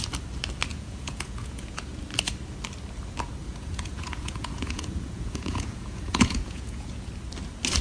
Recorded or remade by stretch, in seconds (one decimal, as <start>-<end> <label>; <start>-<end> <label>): 0.0-0.7 recorded; 0.7-2.0 remade; 2.0-3.4 recorded; 3.4-7.1 remade; 7.1-7.8 recorded